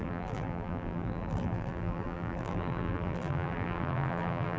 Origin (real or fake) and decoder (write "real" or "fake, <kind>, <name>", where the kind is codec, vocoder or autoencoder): fake, vocoder, BigVGAN v2